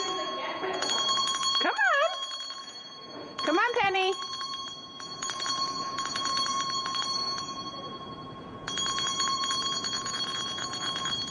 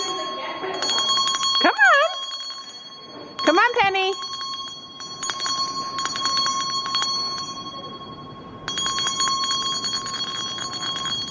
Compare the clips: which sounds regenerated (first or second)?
first